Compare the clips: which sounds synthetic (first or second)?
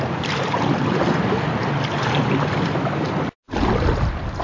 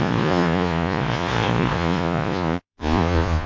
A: second